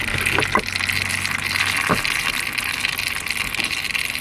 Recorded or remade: recorded